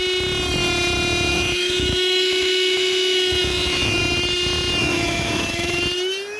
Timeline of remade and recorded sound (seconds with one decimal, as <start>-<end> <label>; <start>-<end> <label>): 0.0-1.3 recorded; 1.3-4.0 remade; 4.0-4.8 recorded; 4.8-5.8 remade; 5.8-6.4 recorded